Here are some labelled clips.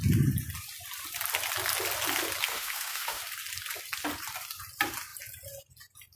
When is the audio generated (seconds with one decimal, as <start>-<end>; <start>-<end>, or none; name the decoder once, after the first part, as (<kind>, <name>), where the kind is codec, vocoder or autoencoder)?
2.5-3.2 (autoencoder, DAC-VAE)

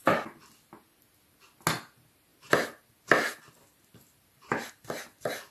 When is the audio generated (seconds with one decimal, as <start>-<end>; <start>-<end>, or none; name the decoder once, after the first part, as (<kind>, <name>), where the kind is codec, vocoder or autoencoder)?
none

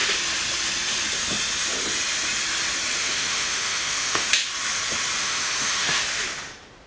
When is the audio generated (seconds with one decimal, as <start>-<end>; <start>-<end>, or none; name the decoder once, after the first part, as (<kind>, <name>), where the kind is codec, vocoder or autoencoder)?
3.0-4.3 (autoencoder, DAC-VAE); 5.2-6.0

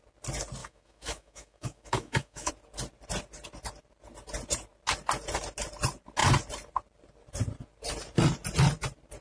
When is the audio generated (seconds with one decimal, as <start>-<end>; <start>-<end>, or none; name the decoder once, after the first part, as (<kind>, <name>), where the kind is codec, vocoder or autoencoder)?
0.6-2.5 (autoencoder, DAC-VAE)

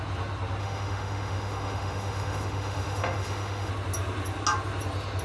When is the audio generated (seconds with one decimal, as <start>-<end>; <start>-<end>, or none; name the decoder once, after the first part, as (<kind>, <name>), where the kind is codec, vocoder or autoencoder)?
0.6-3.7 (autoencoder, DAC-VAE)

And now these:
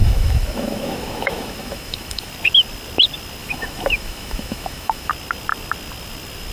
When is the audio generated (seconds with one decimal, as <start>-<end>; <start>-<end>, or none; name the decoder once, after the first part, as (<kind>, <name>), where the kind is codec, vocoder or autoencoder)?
0.0-2.3 (autoencoder, DAC-VAE); 3.4-5.1

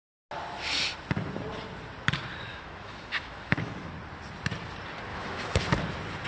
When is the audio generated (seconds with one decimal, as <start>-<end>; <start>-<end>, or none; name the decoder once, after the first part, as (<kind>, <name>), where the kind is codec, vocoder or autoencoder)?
2.5-3.9 (autoencoder, DAC-VAE); 5.1-5.6

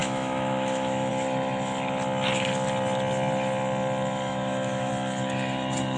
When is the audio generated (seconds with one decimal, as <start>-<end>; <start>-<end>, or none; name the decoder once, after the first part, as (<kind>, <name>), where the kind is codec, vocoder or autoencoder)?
0.0-1.1 (autoencoder, DAC-VAE); 4.3-4.9